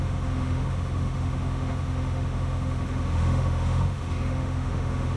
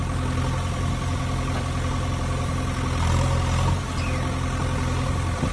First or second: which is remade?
first